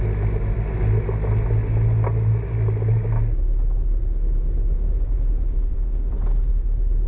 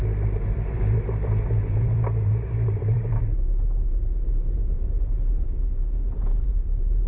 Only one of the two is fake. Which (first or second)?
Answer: second